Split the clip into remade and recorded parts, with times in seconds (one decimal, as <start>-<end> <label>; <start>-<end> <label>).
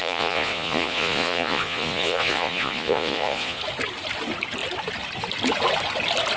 0.0-3.6 remade; 3.6-6.4 recorded